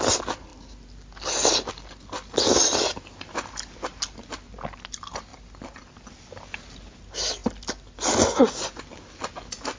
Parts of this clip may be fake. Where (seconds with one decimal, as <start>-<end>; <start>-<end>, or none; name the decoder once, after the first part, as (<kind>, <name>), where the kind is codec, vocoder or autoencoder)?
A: none